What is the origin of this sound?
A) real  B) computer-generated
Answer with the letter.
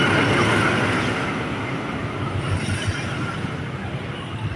A